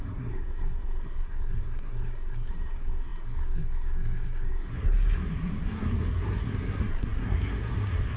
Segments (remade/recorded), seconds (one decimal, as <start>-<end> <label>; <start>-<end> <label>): 0.0-8.2 remade